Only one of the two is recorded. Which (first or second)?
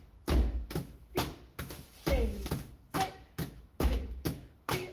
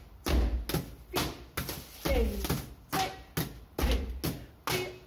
second